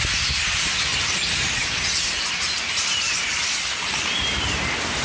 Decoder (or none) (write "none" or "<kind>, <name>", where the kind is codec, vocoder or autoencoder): none